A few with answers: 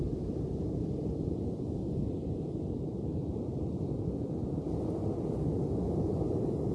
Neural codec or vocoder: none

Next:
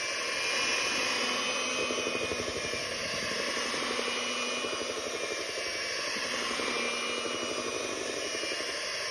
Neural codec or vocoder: none